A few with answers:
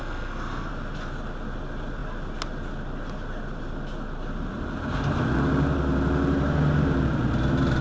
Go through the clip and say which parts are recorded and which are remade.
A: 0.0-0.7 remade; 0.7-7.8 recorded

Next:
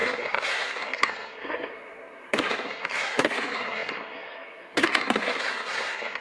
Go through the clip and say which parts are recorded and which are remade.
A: 0.0-6.2 remade

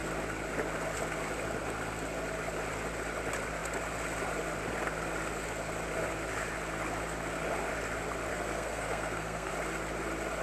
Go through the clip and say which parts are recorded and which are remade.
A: 0.0-8.3 recorded; 8.3-9.5 remade; 9.5-10.4 recorded

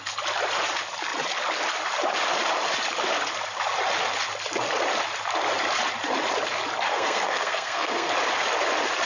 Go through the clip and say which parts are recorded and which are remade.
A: 0.0-6.9 recorded; 6.9-8.1 remade; 8.1-9.1 recorded